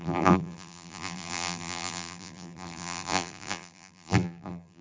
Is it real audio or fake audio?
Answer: fake